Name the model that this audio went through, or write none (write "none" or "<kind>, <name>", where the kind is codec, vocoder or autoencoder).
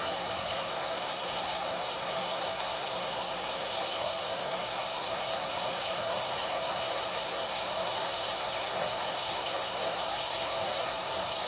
codec, SNAC